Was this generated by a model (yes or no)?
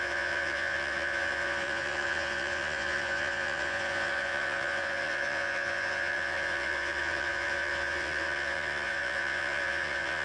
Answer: yes